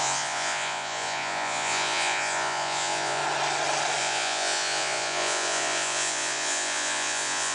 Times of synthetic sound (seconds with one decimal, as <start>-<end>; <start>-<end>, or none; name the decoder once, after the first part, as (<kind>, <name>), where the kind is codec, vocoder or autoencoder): 0.0-3.2 (vocoder, Vocos); 4.0-7.5